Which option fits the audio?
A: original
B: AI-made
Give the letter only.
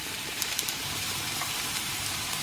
B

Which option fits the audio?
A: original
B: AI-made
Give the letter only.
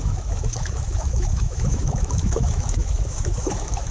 B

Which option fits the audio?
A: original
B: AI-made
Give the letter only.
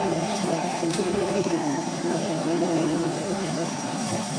B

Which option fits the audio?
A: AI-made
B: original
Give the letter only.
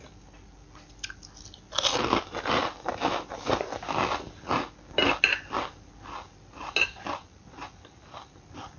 B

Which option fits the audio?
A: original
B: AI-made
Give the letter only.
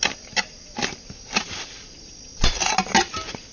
A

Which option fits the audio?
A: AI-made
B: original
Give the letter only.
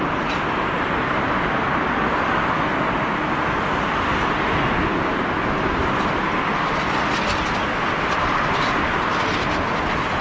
B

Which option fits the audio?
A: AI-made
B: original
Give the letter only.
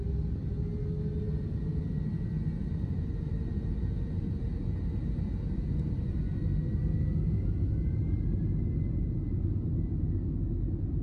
B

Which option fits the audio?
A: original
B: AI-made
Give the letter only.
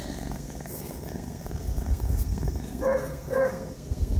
B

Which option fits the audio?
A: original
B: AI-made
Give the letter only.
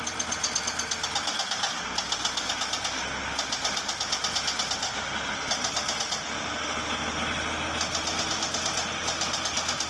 A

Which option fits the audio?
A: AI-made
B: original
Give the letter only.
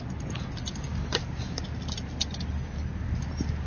B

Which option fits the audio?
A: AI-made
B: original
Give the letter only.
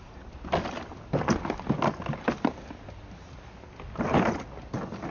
B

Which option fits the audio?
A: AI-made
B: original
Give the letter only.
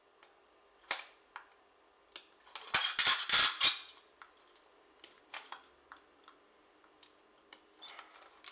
B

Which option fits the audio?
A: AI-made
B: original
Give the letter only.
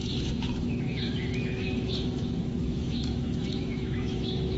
A